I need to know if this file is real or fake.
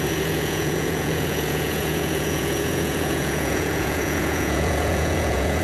fake